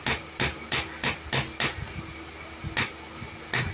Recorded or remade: recorded